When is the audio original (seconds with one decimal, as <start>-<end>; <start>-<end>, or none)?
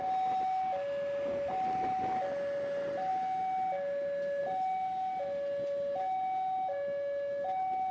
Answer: 0.0-7.9